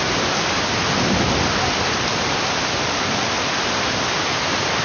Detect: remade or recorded recorded